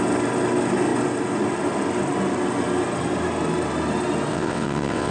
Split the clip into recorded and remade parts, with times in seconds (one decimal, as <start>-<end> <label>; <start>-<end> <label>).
0.0-4.3 recorded; 4.3-5.1 remade